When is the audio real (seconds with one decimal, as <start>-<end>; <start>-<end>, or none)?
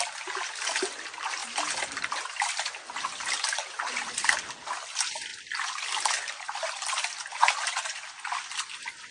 0.0-1.4; 4.4-5.3; 7.2-9.1